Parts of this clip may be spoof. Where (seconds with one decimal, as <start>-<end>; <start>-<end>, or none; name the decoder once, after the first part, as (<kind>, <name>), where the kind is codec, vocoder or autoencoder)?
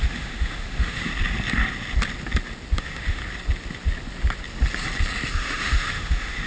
0.0-1.1 (autoencoder, DAC-VAE); 2.8-3.2; 5.3-6.5